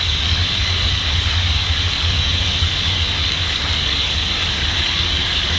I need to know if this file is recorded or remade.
remade